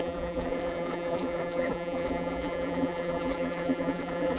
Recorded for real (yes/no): no